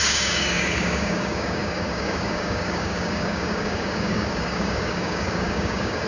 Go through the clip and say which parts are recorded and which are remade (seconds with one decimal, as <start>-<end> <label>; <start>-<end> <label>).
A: 0.0-6.1 remade